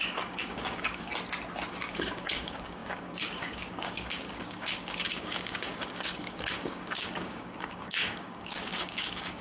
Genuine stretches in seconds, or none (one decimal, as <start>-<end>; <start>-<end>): 1.1-1.7